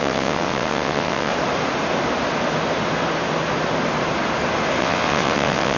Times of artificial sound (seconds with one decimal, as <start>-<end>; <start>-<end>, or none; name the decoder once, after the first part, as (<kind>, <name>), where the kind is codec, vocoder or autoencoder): 0.0-1.3 (vocoder, WaveNeXt); 4.8-5.8